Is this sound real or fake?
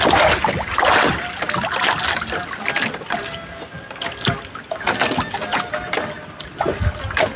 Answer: real